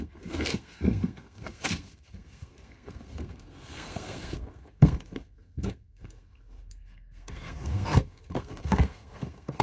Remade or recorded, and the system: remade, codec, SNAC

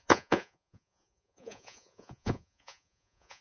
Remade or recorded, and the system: remade, vocoder, Vocos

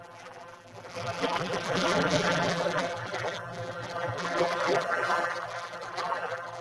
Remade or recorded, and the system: remade, vocoder, BigVGAN v2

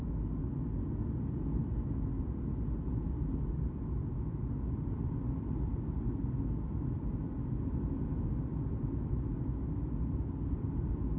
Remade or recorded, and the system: recorded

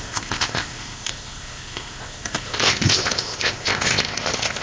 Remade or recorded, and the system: remade, codec, ZipCodec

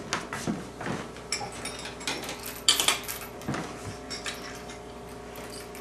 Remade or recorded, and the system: recorded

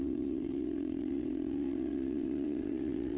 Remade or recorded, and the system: remade, vocoder, WaveNeXt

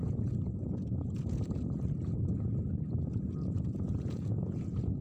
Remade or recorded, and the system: remade, vocoder, Vocos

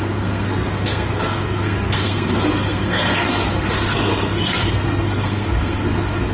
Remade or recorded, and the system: remade, codec, SNAC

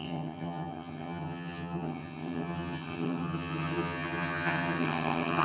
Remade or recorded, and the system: remade, vocoder, HiFi-GAN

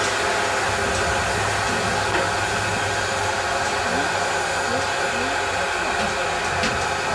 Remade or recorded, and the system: recorded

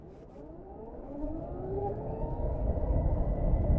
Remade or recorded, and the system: remade, codec, DAC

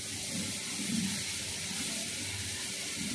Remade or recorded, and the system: recorded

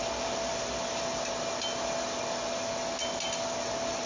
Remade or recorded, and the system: recorded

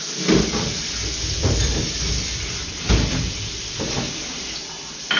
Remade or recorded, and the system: remade, vocoder, BigVGAN v2